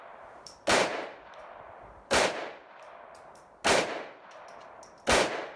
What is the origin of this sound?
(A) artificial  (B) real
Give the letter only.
B